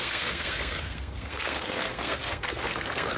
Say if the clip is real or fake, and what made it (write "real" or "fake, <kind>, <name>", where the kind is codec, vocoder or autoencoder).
fake, codec, SNAC